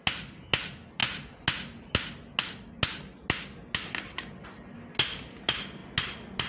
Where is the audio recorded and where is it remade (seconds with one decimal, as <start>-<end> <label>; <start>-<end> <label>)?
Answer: 0.0-6.5 recorded